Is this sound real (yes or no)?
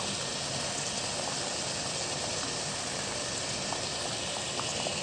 yes